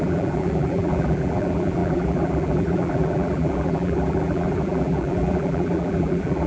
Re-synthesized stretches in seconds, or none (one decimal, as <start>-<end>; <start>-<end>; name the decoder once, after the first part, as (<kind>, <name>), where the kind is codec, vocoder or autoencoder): 0.0-6.5 (vocoder, BigVGAN v2)

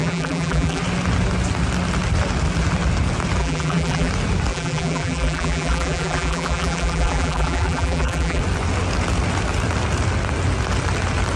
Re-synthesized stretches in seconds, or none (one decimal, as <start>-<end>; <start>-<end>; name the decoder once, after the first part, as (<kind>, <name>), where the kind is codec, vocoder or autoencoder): 0.0-0.8 (vocoder, BigVGAN v2); 3.4-4.1; 4.5-8.4

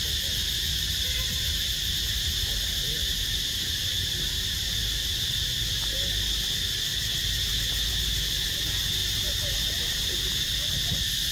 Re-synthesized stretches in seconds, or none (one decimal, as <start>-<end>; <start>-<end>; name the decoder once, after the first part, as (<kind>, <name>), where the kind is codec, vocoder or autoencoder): 0.4-5.3 (vocoder, BigVGAN v2); 9.0-9.6

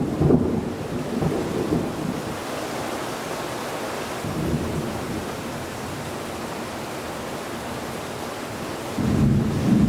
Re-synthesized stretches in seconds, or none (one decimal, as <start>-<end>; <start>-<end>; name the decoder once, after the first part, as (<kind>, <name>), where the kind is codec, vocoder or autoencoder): none

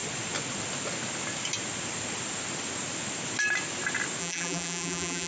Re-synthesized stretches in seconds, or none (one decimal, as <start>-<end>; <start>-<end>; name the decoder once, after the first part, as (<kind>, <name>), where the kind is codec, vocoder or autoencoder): 4.2-5.3 (vocoder, BigVGAN v2)